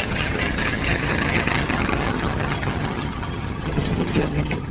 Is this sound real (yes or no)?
no